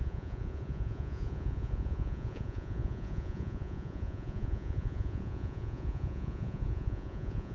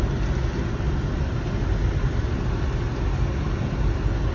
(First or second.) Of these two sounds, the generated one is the first